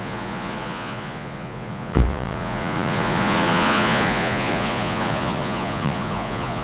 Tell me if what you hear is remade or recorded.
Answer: remade